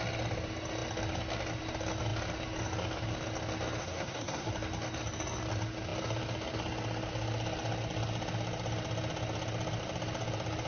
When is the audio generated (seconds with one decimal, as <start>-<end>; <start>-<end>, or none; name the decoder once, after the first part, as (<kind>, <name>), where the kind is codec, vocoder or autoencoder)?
3.8-4.5 (codec, SNAC)